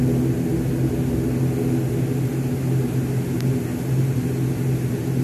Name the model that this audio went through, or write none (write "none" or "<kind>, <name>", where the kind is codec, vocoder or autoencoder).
none